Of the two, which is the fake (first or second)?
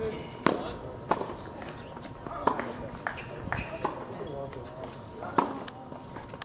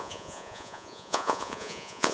second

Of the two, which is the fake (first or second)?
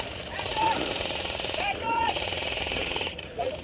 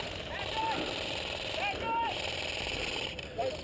first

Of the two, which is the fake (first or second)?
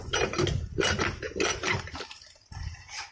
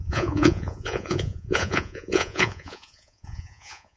second